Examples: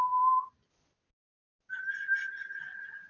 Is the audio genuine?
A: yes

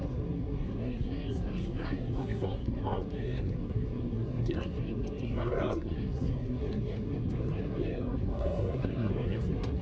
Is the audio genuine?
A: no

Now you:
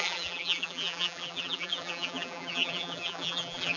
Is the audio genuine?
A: no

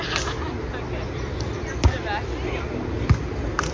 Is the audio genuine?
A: yes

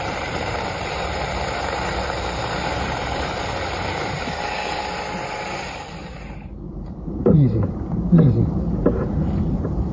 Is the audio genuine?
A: no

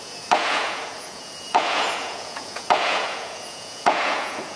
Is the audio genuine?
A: no